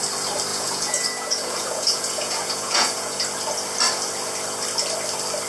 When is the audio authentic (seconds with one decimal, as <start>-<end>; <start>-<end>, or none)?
0.0-0.5; 3.2-5.5